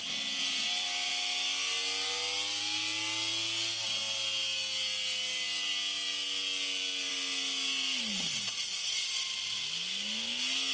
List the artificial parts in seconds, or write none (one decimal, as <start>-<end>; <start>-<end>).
none